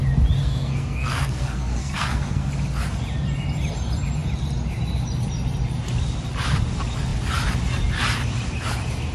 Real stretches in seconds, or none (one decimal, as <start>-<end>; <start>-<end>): 0.0-0.4; 2.5-9.1